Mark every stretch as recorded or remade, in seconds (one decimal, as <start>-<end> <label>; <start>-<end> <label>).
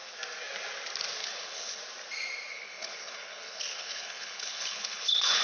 0.0-1.2 recorded; 1.2-1.8 remade; 1.8-2.5 recorded; 2.5-5.4 remade